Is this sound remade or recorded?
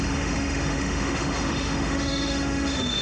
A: remade